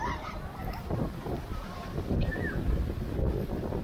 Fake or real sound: fake